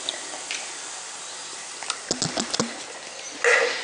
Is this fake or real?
real